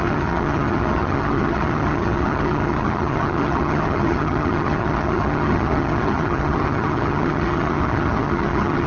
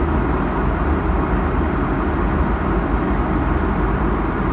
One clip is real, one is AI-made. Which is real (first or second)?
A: second